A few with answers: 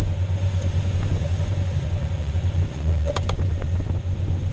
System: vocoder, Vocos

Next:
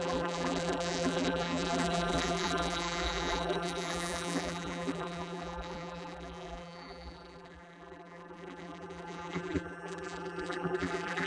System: vocoder, BigVGAN v2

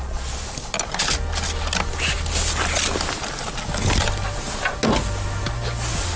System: none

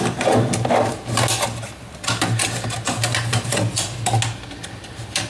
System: none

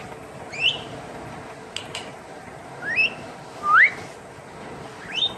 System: none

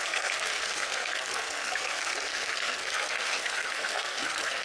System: codec, SNAC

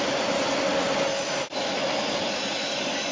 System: none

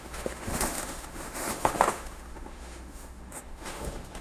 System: autoencoder, DAC-VAE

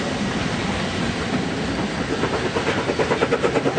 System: none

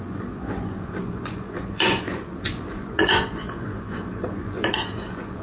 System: vocoder, Vocos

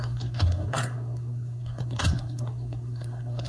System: codec, SNAC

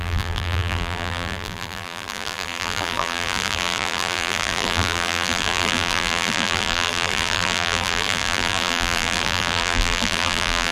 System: vocoder, BigVGAN v2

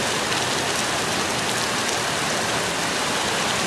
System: none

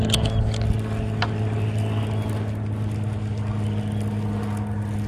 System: none